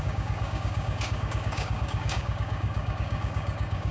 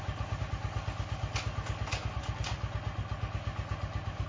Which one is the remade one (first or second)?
first